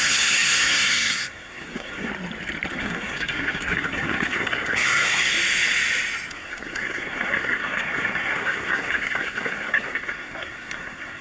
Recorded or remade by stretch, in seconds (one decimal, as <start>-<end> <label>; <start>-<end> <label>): 0.0-2.1 remade; 2.1-2.7 recorded; 2.7-5.3 remade; 5.3-6.3 recorded; 6.3-11.2 remade